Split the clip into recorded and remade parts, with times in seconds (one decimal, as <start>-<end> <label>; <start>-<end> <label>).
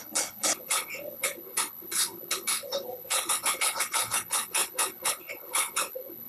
0.0-6.3 remade